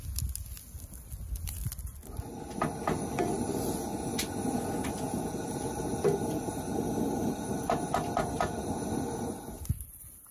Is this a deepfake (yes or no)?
no